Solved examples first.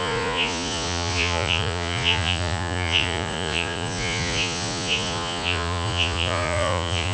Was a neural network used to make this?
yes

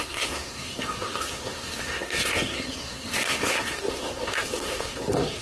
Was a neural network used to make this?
yes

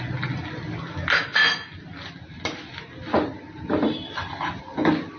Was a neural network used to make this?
no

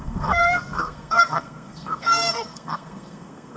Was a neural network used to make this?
yes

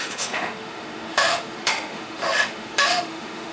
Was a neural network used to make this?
yes